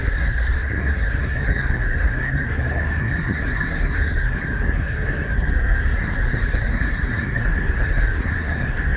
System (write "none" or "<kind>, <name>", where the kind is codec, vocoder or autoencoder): codec, SNAC